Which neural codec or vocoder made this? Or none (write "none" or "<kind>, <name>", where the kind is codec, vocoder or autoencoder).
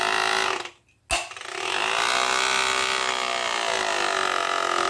none